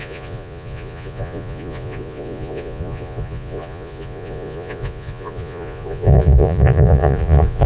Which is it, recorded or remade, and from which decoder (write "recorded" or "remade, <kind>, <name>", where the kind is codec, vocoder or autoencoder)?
remade, vocoder, Vocos